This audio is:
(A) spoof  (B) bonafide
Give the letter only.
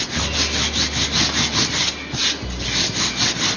B